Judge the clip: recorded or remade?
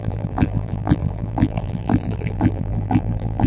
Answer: remade